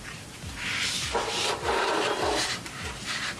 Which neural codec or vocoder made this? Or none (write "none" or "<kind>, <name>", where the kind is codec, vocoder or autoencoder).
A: vocoder, BigVGAN v2